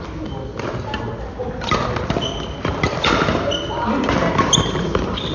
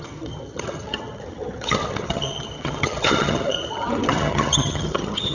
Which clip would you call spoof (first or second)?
second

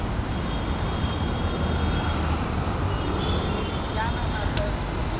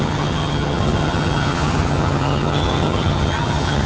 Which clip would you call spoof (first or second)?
second